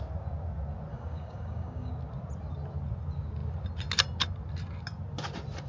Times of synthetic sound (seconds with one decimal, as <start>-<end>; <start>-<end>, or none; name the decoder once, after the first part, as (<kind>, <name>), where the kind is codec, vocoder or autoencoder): 0.9-1.9 (codec, DAC)